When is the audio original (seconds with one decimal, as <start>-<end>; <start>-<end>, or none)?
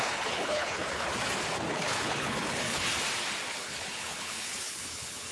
1.1-1.7; 2.9-3.5